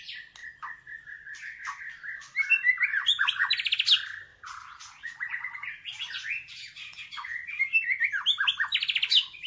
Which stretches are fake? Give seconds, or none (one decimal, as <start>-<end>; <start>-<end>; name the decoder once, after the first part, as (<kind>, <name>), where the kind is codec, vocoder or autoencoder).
2.9-3.5 (vocoder, Vocos); 4.3-7.6